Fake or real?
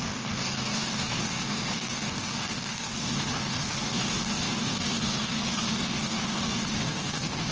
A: fake